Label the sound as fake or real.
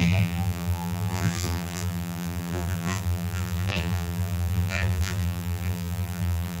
fake